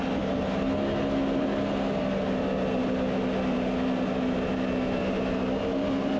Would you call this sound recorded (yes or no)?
yes